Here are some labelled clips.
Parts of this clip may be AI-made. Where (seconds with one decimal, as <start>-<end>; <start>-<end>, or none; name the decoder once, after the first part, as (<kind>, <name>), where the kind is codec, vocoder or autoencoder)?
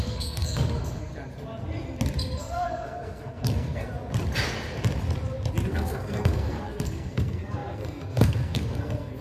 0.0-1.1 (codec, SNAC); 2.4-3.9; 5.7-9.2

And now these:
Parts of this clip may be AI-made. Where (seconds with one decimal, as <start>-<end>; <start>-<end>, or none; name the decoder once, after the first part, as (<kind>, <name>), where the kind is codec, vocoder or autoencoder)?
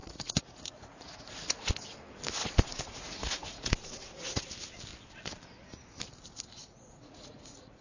0.0-1.7 (vocoder, Vocos); 2.4-4.4; 6.6-7.8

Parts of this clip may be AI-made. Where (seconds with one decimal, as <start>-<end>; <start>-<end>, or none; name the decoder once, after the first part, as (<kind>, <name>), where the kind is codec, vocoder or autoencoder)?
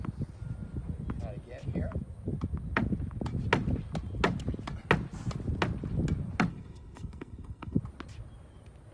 6.5-7.8 (codec, SNAC)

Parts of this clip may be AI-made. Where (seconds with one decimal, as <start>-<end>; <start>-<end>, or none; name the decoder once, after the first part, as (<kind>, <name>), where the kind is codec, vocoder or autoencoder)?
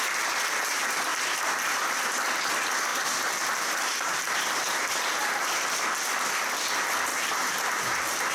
2.9-4.3 (vocoder, BigVGAN v2); 7.1-8.3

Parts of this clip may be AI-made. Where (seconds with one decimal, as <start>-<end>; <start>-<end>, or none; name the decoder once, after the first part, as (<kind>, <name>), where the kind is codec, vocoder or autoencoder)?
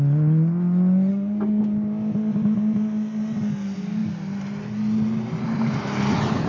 1.1-1.6 (codec, SNAC)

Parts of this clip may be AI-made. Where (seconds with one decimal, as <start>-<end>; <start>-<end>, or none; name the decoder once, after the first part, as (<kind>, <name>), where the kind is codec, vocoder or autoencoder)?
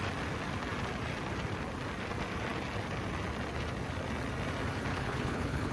4.9-5.7 (codec, HILCodec)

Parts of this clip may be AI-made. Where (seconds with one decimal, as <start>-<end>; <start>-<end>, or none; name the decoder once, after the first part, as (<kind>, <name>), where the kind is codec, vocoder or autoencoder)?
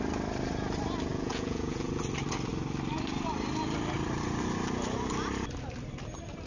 1.1-1.9 (vocoder, Vocos)